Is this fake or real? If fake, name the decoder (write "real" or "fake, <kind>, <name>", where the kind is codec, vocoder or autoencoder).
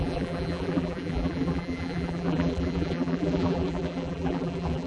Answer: fake, vocoder, BigVGAN v2